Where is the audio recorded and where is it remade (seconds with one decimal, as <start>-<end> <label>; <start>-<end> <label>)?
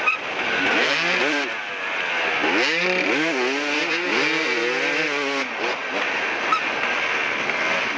0.0-8.0 recorded